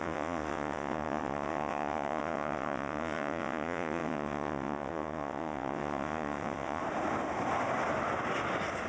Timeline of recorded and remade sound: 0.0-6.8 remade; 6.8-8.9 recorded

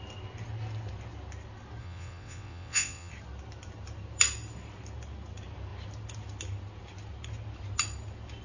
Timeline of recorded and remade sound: 0.0-1.8 recorded; 1.8-3.1 remade; 3.1-8.4 recorded

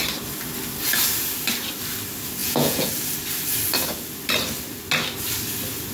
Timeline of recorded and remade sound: 0.0-2.4 recorded; 2.4-2.9 remade; 2.9-5.9 recorded

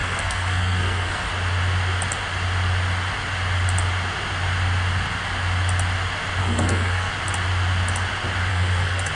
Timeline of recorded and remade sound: 0.0-1.3 remade; 1.3-6.4 recorded; 6.4-7.1 remade; 7.1-8.5 recorded; 8.5-9.1 remade

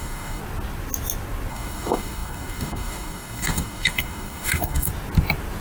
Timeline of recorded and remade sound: 0.0-0.4 remade; 0.4-1.5 recorded; 1.5-4.9 remade; 4.9-5.6 recorded